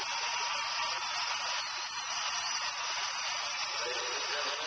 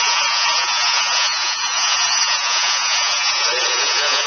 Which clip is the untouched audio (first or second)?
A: first